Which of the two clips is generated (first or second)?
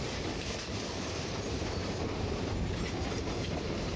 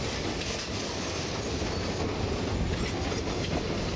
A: first